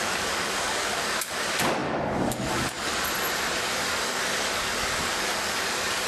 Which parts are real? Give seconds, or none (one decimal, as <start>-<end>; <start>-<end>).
2.9-3.6